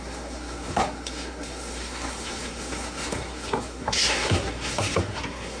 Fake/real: fake